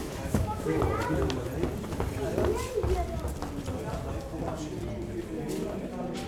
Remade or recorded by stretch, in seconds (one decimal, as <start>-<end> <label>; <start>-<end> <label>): 0.0-0.8 remade; 0.8-6.3 recorded